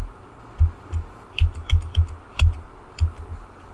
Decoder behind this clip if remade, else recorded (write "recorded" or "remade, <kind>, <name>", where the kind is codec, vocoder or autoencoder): recorded